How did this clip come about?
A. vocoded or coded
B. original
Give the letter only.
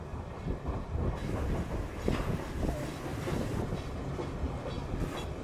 B